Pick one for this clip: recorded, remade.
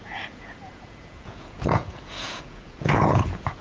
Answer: remade